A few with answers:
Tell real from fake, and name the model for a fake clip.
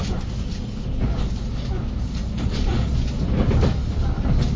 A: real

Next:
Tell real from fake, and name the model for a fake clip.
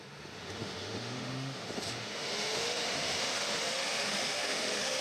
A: fake, autoencoder, DAC-VAE